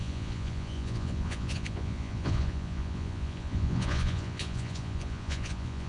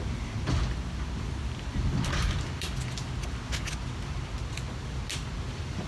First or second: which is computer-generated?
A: first